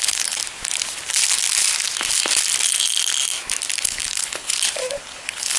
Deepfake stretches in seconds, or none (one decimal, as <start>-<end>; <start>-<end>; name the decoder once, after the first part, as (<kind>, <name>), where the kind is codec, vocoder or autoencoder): 0.0-0.4 (codec, HILCodec); 3.8-4.5; 5.0-5.6

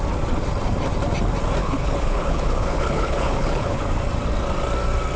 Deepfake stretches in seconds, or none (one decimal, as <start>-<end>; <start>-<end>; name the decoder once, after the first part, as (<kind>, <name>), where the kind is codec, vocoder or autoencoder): 1.6-3.8 (codec, HILCodec)

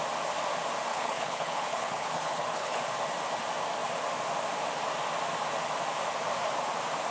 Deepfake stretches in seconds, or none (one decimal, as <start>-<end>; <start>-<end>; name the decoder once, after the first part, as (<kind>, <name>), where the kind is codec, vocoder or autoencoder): 0.9-2.8 (codec, HILCodec)

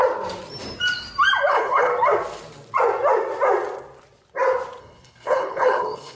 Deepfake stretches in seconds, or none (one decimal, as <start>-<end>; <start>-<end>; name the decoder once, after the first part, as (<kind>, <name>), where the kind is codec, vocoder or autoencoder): 1.5-1.9 (codec, HILCodec); 4.8-6.2

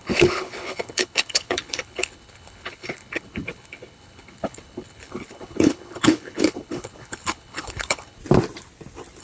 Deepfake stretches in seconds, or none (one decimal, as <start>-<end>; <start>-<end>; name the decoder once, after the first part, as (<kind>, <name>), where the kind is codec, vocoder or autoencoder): 0.0-8.2 (codec, HILCodec)

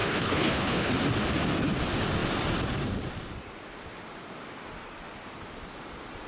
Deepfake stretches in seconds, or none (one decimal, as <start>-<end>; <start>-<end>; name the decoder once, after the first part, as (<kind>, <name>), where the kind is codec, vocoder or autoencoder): 0.0-0.9 (codec, HILCodec)

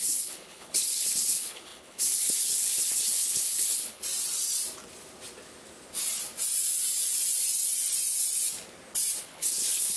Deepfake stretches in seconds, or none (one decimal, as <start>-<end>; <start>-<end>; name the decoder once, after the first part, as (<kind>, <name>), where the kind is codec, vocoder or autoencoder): 0.0-4.0 (codec, HILCodec); 9.2-10.0

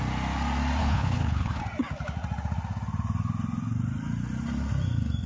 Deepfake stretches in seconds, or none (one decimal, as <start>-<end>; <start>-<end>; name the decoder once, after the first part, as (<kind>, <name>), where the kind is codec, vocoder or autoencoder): 0.8-1.6 (codec, HILCodec)